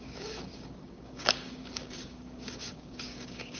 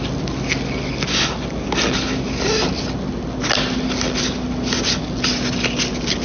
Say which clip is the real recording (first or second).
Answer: second